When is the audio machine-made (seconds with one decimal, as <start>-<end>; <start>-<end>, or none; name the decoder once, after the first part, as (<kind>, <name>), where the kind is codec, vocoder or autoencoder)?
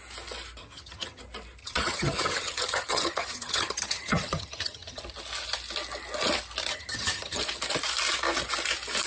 0.6-1.2 (vocoder, HiFi-GAN); 1.6-5.0; 6.7-7.4